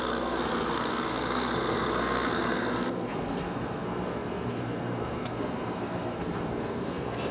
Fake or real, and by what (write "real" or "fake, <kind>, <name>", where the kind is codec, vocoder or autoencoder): fake, codec, SNAC